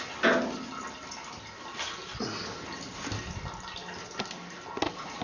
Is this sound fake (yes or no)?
no